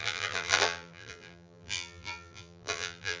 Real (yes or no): no